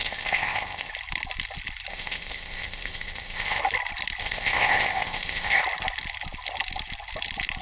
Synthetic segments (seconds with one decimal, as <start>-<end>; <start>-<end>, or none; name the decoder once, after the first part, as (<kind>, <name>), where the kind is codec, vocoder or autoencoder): 0.0-0.9 (codec, ZipCodec); 1.9-3.6; 4.2-5.6